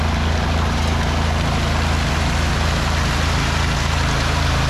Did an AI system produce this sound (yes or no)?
no